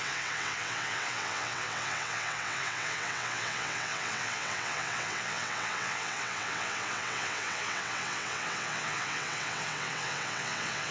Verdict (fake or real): fake